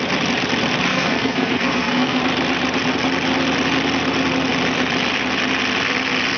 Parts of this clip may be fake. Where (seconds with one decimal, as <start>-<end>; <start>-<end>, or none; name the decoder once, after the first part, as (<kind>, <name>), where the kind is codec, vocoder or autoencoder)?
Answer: 0.9-2.2 (codec, SNAC)